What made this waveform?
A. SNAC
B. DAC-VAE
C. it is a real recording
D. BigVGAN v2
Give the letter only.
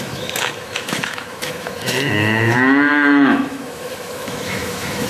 B